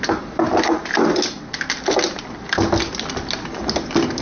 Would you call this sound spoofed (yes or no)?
no